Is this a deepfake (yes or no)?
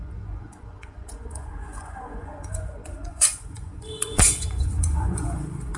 yes